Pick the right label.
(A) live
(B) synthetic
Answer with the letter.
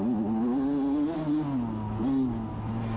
A